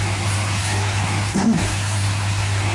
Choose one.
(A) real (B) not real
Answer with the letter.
B